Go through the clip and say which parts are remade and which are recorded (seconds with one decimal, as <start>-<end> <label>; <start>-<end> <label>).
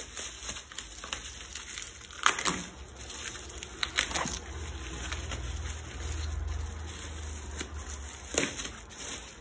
0.0-9.4 recorded